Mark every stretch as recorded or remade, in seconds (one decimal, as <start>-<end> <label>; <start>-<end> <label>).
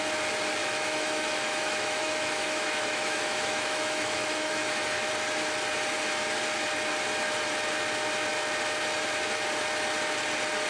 0.0-0.6 recorded; 0.6-5.1 remade; 5.1-10.7 recorded